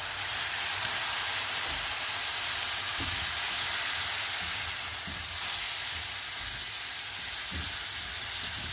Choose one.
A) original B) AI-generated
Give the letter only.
A